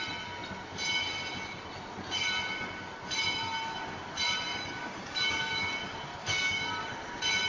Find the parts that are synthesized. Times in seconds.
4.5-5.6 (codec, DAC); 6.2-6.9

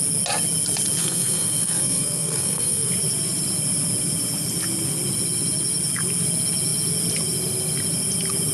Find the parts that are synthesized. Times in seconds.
1.0-2.9 (codec, SNAC)